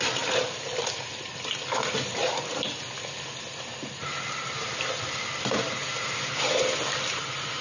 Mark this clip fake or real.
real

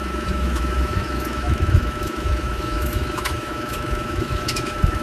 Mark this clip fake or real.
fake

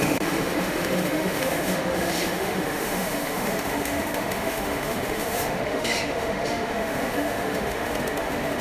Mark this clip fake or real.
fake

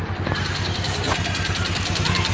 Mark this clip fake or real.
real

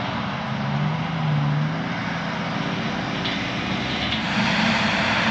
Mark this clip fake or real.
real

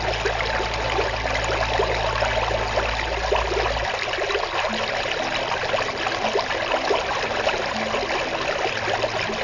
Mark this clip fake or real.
real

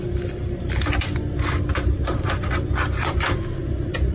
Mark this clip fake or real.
real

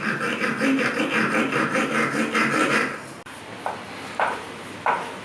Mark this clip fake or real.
real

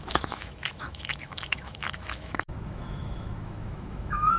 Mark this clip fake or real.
fake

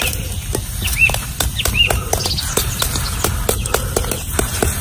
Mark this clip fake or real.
real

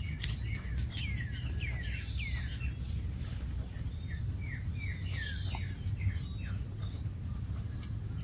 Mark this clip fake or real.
real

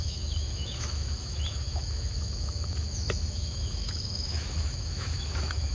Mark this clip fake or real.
fake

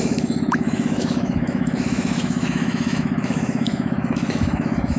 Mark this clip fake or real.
fake